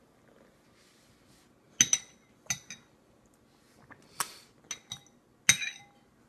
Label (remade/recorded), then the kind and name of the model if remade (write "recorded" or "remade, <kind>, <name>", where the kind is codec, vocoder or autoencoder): recorded